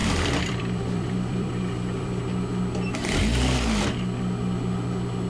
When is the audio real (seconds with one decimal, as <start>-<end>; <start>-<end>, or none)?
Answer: 2.2-5.3